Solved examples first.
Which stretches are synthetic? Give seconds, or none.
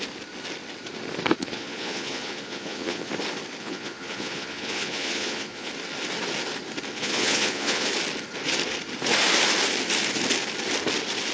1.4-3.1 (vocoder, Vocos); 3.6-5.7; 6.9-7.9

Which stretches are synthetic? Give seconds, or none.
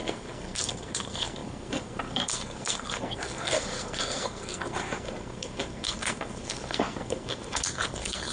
0.0-8.3 (codec, SNAC)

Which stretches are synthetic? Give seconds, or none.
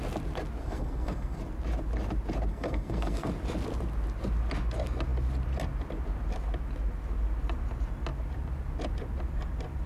0.6-1.4 (codec, SNAC); 2.5-3.3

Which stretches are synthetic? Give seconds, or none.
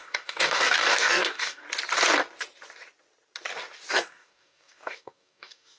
0.0-1.6 (codec, DAC); 3.9-5.8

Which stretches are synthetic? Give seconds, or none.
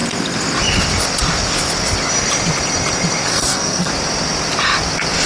3.3-3.9 (codec, SNAC)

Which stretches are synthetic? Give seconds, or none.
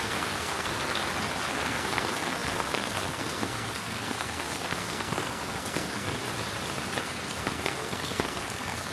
0.0-1.0 (codec, SNAC); 1.5-6.2; 7.0-8.9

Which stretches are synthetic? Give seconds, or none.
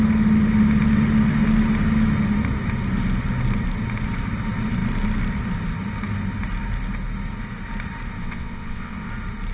8.2-9.1 (vocoder, WaveNeXt)